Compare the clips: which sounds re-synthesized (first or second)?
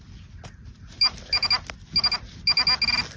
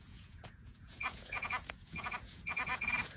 second